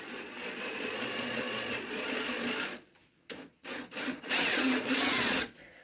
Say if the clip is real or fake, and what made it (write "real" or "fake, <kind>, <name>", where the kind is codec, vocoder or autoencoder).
fake, vocoder, Vocos